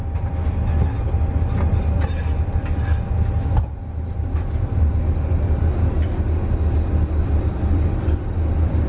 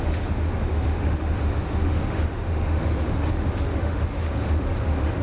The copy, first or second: second